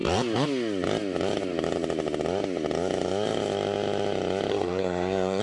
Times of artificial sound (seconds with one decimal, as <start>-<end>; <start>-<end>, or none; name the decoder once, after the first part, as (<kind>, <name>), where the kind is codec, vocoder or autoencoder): 4.5-5.4 (codec, SNAC)